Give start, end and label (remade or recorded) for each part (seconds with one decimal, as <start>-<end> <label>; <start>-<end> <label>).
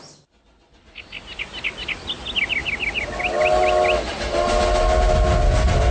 0.0-5.9 recorded